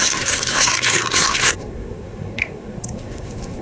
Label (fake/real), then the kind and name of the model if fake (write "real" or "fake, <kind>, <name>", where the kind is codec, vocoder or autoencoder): fake, codec, SNAC